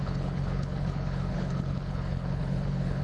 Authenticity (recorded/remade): remade